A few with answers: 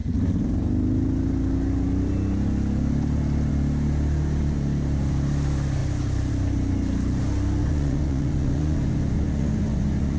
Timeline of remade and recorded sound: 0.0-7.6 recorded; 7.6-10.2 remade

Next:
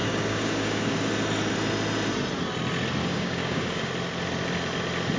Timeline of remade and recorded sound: 0.0-1.1 remade; 1.1-3.0 recorded; 3.0-3.9 remade; 3.9-5.2 recorded

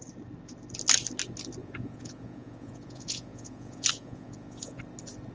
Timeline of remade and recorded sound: 0.0-1.6 recorded; 1.6-4.8 remade; 4.8-5.3 recorded

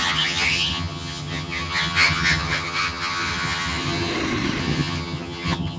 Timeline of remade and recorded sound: 0.0-4.1 remade; 4.1-4.6 recorded; 4.6-5.8 remade

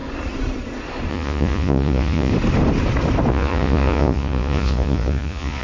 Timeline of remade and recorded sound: 0.0-1.1 recorded; 1.1-2.3 remade; 2.3-3.3 recorded; 3.3-5.6 remade

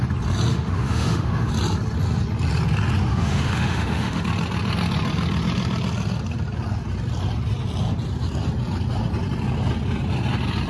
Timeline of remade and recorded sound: 0.0-0.5 recorded; 0.5-1.5 remade; 1.5-3.1 recorded; 3.1-4.2 remade; 4.2-10.7 recorded

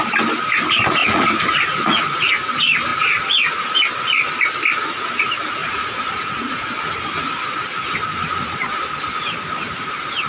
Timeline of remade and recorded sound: 0.0-1.0 recorded; 1.0-2.3 remade; 2.3-5.6 recorded; 5.6-6.7 remade; 6.7-10.3 recorded